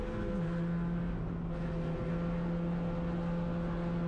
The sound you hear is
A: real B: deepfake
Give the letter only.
A